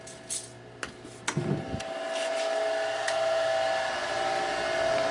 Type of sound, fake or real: real